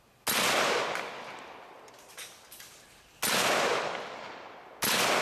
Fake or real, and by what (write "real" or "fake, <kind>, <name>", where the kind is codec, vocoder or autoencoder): real